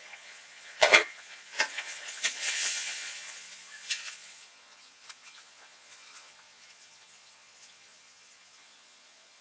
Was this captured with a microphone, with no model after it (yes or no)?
no